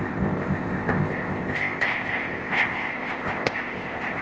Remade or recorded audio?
remade